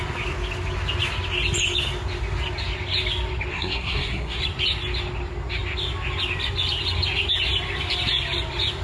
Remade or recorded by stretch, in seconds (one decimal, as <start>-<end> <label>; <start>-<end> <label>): 0.0-3.5 recorded; 3.5-4.4 remade; 4.4-8.8 recorded